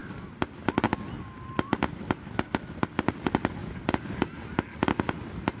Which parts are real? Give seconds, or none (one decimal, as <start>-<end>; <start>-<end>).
0.0-5.6